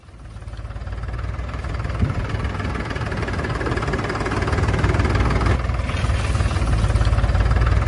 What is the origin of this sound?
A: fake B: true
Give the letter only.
B